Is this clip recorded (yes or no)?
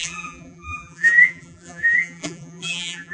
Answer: no